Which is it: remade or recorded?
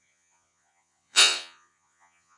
remade